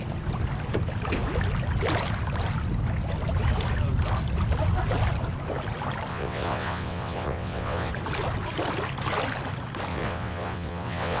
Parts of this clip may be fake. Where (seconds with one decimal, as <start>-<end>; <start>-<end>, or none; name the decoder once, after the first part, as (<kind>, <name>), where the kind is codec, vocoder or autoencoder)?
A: 6.1-7.9 (vocoder, WaveNeXt); 9.9-11.2